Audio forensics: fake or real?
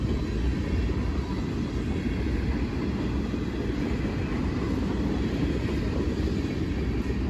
real